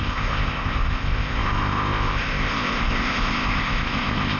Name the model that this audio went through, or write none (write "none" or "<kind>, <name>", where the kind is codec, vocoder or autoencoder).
codec, ZipCodec